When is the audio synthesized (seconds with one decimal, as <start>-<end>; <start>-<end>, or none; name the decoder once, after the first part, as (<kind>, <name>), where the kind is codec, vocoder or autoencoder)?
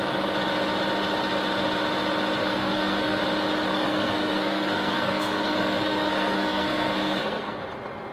2.4-3.2 (codec, SNAC); 3.7-7.6